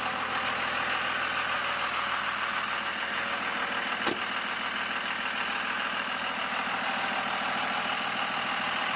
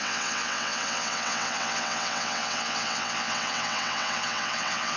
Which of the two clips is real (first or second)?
first